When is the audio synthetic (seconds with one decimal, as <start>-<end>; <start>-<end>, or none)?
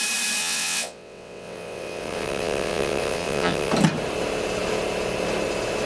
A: 0.4-3.7